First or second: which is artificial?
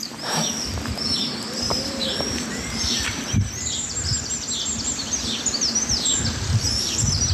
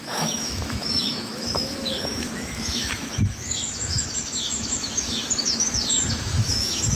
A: second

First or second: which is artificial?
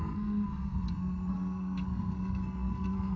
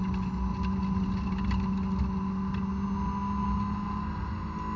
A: first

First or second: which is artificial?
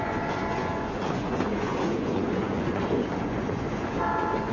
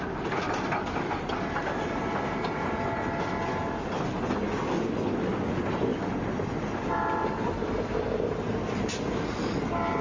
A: first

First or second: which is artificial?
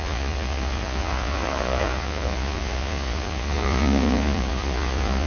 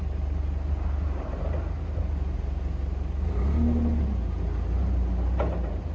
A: first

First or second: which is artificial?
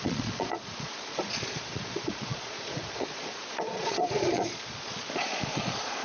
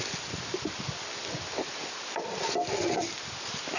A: first